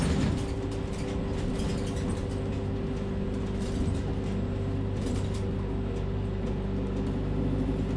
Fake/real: real